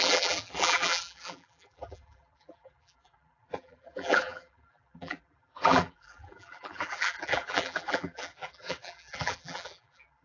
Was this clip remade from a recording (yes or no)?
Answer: yes